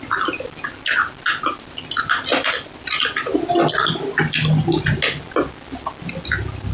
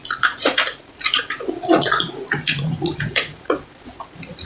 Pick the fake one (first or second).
second